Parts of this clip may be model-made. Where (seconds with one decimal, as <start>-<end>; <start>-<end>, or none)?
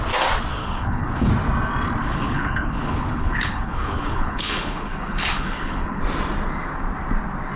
0.6-1.3; 2.0-6.0